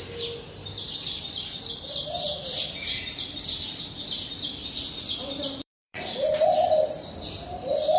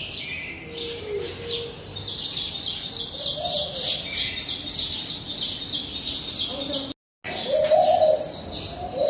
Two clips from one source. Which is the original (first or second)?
second